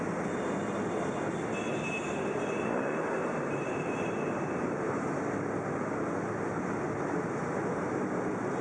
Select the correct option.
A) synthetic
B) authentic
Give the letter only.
B